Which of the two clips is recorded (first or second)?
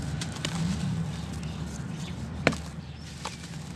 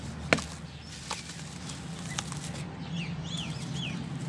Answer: second